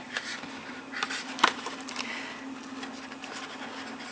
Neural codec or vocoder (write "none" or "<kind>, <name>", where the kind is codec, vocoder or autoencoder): none